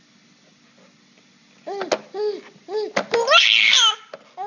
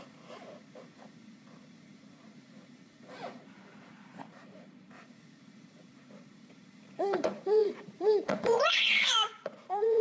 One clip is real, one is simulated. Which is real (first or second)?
first